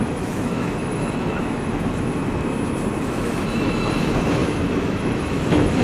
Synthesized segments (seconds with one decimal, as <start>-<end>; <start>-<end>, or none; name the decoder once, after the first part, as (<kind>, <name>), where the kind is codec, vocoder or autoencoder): 0.0-2.2 (autoencoder, DAC-VAE); 3.0-5.8